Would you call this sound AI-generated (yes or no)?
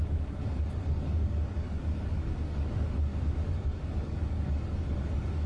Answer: yes